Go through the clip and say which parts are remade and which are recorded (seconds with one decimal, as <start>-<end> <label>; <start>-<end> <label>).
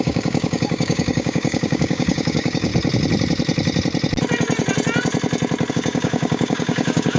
0.0-2.7 remade; 2.7-5.7 recorded; 5.7-7.2 remade